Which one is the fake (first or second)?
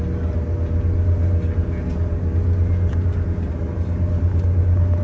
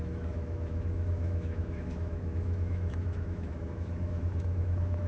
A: second